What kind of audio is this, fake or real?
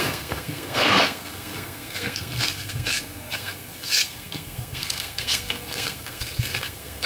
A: fake